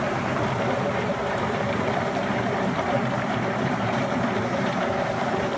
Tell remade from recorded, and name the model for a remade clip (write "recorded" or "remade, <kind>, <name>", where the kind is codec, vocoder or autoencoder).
remade, vocoder, BigVGAN v2